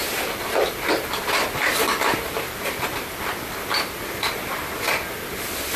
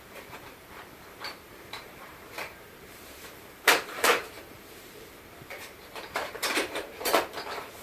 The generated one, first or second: second